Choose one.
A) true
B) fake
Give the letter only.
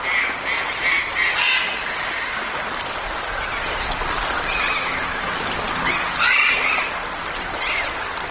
A